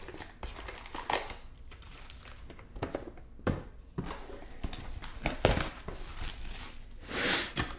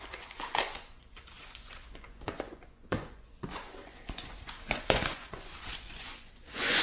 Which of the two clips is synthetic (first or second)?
second